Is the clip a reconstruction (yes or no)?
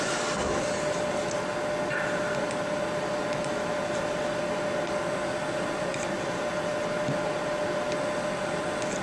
no